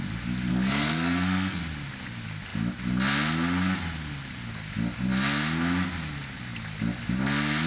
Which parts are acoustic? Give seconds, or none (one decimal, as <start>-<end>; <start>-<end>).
0.0-0.5; 1.6-7.7